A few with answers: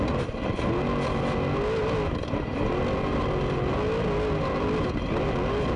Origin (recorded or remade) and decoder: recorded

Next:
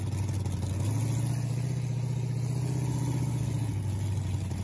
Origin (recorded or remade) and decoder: recorded